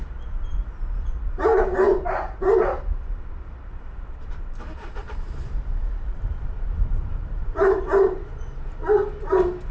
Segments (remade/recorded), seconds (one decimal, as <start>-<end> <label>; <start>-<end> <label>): 0.0-5.0 recorded; 5.0-8.2 remade; 8.2-9.7 recorded